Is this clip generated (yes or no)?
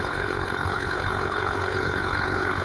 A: yes